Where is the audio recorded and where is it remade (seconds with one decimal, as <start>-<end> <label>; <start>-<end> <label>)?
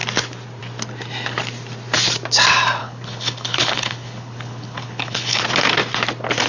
0.0-2.8 recorded; 2.8-5.4 remade; 5.4-6.5 recorded